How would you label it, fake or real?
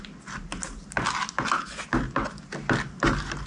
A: real